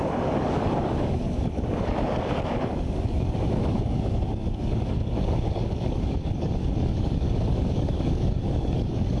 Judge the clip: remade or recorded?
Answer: remade